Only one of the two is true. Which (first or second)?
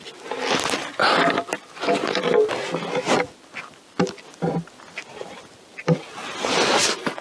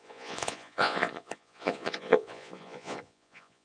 first